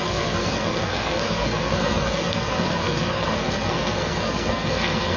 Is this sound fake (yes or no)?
yes